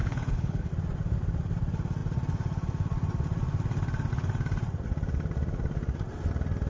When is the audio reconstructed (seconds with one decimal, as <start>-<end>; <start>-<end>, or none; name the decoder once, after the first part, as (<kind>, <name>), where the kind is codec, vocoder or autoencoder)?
0.0-0.7 (codec, HILCodec)